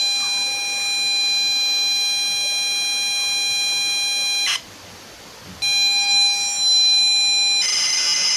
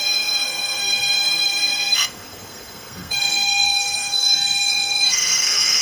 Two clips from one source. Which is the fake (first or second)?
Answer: second